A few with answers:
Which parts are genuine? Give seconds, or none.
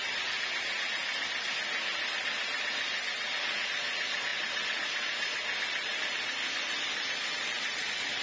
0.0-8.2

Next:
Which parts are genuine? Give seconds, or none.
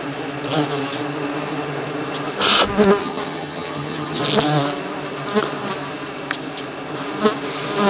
0.0-3.0; 4.2-7.9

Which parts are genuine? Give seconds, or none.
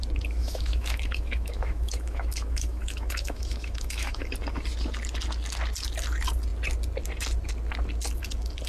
0.0-0.4; 4.3-8.7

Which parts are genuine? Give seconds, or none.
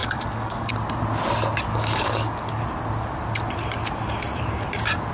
0.7-1.7; 2.6-5.1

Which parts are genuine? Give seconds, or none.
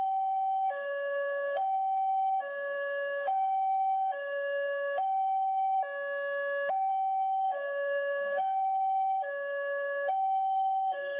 5.8-6.9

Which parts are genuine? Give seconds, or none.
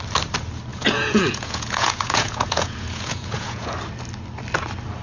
0.0-0.7; 3.7-5.0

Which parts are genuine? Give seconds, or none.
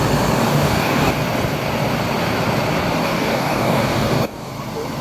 0.0-0.4; 1.1-3.0; 4.5-5.0